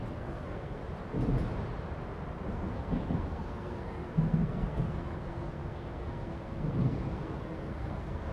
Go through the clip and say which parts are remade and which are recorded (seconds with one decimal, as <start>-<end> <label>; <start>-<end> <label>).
0.0-0.8 remade; 0.8-2.5 recorded; 2.5-8.3 remade